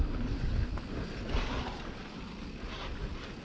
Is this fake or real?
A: real